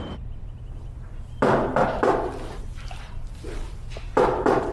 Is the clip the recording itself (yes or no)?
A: no